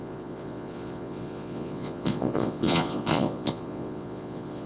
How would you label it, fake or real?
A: fake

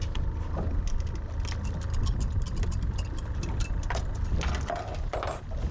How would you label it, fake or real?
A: real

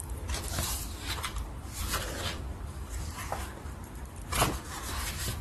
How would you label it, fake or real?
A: fake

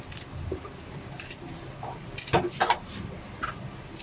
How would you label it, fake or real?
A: real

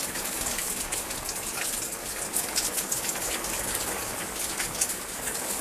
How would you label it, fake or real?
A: fake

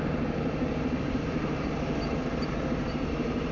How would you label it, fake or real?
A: fake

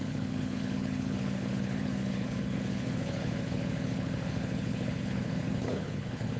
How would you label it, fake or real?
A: fake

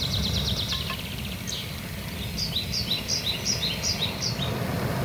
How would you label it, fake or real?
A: real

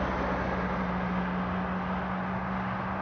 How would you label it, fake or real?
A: real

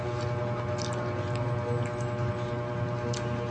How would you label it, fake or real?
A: real